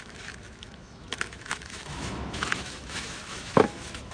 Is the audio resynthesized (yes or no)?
yes